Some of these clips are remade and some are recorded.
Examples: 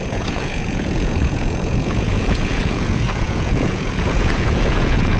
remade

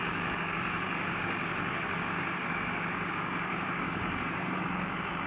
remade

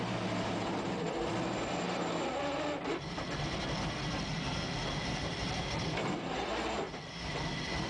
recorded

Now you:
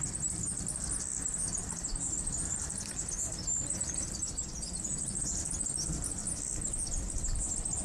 recorded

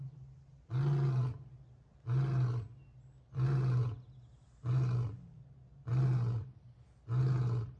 recorded